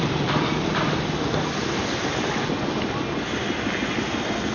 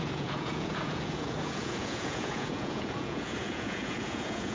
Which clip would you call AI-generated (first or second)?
second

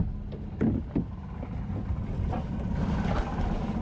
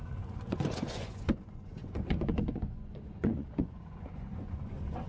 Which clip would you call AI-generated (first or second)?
second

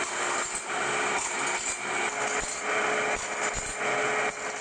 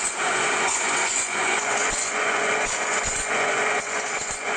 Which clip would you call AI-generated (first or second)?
second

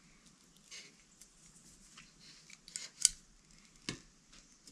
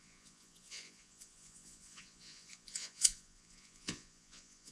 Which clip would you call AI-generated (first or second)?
second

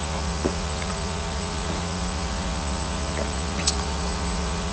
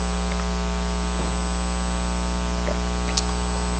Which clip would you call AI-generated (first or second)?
first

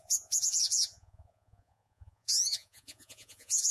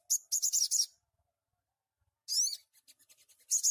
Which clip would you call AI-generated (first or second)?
first